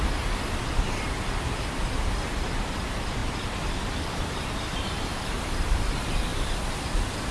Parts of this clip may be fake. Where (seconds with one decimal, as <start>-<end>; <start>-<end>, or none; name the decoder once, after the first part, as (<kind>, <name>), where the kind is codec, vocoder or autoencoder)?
3.2-4.9 (vocoder, BigVGAN v2); 6.3-7.3